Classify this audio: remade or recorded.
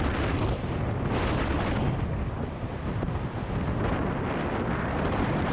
recorded